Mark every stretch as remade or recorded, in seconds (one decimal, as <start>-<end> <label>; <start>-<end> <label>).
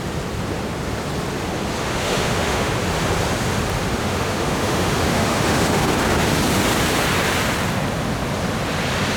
0.0-1.8 recorded; 1.8-2.7 remade; 2.7-4.0 recorded; 4.0-5.9 remade; 5.9-9.2 recorded